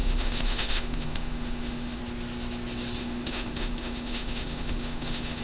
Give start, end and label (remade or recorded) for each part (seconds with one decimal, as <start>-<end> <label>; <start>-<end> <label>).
0.0-2.0 remade; 2.0-3.0 recorded; 3.0-5.4 remade